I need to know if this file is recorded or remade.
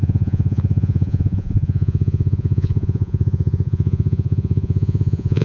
remade